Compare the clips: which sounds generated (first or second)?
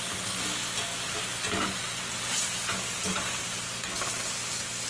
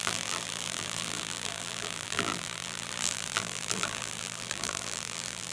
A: second